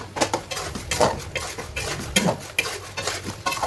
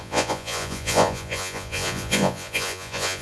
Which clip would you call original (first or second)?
first